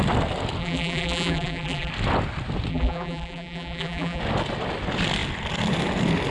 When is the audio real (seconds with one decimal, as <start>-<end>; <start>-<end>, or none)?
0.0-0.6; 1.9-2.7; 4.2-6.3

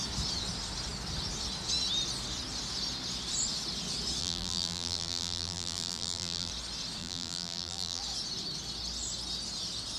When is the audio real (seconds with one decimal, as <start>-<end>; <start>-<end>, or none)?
0.0-4.2; 6.5-7.0; 8.0-10.0

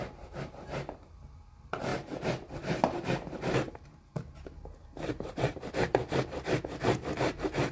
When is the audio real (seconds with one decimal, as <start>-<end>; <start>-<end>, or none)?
0.0-1.9; 6.1-7.7

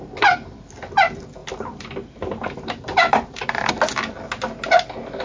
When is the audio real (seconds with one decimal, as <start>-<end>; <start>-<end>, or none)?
0.0-1.4; 3.7-5.2